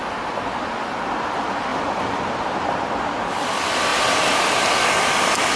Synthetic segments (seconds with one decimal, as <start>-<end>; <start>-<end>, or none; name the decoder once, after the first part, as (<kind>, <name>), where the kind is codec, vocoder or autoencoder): 1.7-3.3 (vocoder, BigVGAN v2); 3.9-4.7